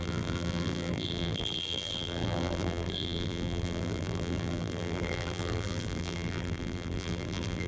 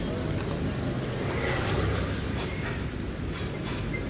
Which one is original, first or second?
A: second